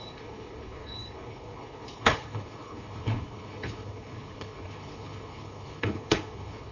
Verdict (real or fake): fake